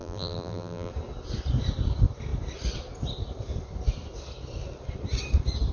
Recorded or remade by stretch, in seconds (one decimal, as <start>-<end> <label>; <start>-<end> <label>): 0.0-0.9 remade; 0.9-5.7 recorded